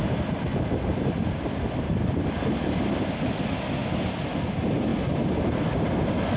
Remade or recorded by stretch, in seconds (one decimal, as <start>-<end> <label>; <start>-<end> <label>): 0.0-0.5 recorded; 0.5-1.4 remade; 1.4-3.8 recorded; 3.8-4.4 remade; 4.4-4.9 recorded; 4.9-6.4 remade